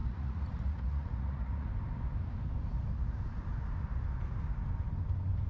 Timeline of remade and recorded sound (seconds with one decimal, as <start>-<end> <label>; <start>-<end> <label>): 0.0-1.7 remade; 1.7-5.5 recorded